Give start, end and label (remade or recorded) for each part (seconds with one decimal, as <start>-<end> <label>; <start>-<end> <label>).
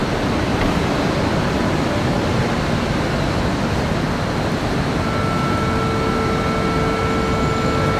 0.0-8.0 recorded